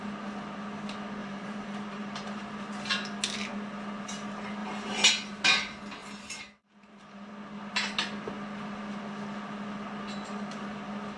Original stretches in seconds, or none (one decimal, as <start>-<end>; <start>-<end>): 0.0-1.2; 2.5-4.6; 5.1-6.0; 7.3-11.2